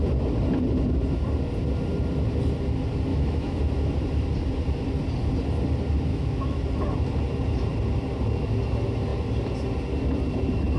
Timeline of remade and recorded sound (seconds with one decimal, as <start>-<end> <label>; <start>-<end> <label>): 0.0-3.1 recorded; 3.1-3.6 remade; 3.6-6.1 recorded; 6.1-6.6 remade; 6.6-10.8 recorded